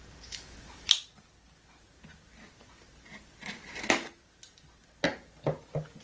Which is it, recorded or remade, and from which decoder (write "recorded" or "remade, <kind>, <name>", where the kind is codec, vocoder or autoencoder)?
recorded